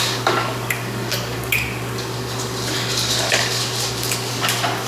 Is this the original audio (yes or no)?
no